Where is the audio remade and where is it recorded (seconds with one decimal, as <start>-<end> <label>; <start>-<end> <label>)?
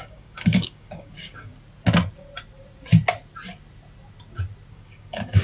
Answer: 0.0-1.5 remade; 1.5-4.7 recorded; 4.7-5.4 remade